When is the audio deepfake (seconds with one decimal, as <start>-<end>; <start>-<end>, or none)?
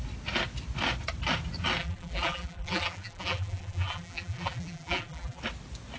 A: 1.8-5.4